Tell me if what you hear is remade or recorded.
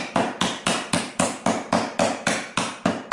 recorded